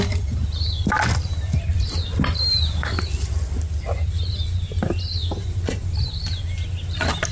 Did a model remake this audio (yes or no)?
no